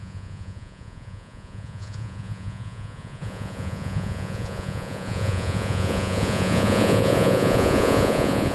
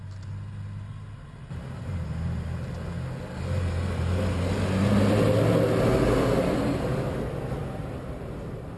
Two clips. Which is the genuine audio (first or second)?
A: second